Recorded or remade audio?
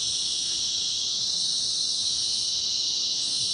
remade